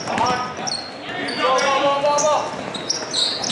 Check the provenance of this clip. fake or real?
real